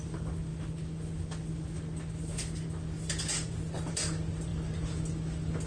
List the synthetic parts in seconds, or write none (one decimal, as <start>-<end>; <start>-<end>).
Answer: none